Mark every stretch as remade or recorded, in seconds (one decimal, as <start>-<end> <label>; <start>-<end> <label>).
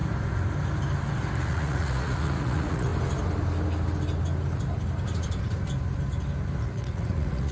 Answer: 0.0-1.4 recorded; 1.4-2.9 remade; 2.9-6.6 recorded; 6.6-7.5 remade